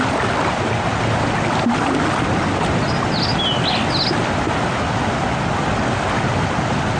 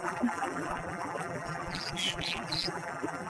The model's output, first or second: second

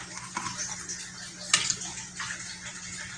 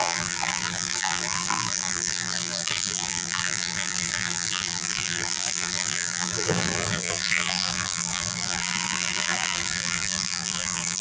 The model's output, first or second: second